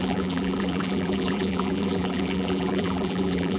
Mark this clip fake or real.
fake